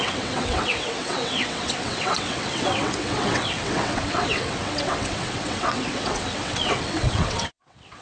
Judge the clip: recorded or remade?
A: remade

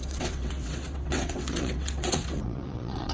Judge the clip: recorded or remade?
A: remade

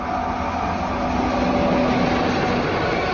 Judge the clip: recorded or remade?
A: recorded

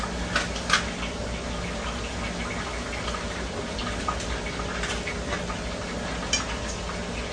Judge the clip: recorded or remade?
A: recorded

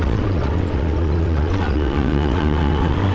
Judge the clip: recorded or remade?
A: remade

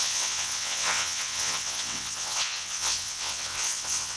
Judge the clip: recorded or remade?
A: remade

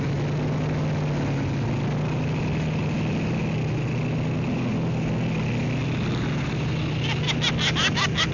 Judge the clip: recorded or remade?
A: recorded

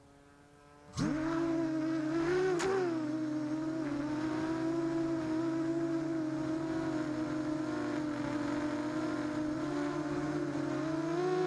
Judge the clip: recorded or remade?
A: recorded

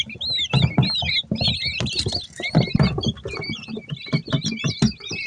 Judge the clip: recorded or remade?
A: recorded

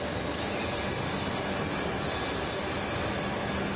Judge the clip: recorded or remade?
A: recorded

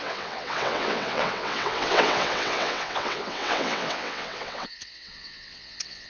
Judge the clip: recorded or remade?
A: remade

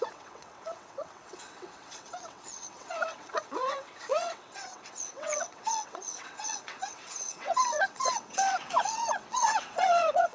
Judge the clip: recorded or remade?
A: remade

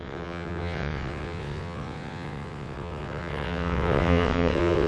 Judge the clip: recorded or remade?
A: remade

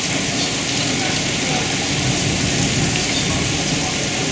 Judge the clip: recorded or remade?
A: recorded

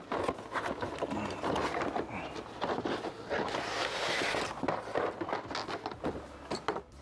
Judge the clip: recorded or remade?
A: recorded